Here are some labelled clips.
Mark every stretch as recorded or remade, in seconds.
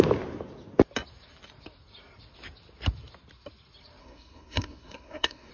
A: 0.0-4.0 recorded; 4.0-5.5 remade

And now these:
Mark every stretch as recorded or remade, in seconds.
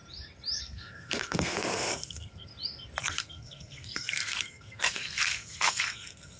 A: 0.0-0.6 recorded; 0.6-2.5 remade; 2.5-3.0 recorded; 3.0-6.4 remade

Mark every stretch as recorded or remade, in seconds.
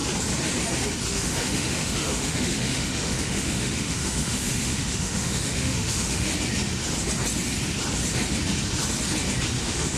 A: 0.0-1.1 recorded; 1.1-6.3 remade; 6.3-9.6 recorded; 9.6-10.0 remade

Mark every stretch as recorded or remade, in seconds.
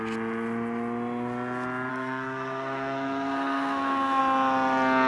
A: 0.0-1.9 recorded; 1.9-4.2 remade; 4.2-5.1 recorded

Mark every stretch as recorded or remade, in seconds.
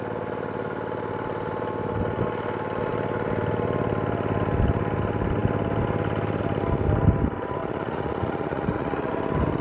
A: 0.0-7.6 recorded; 7.6-9.1 remade; 9.1-9.6 recorded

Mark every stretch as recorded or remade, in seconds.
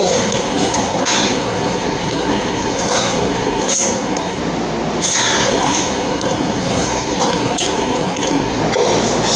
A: 0.0-4.4 remade; 4.4-5.0 recorded; 5.0-8.6 remade; 8.6-9.4 recorded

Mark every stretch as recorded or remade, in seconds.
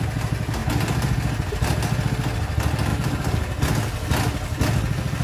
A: 0.0-2.9 recorded; 2.9-3.6 remade; 3.6-5.2 recorded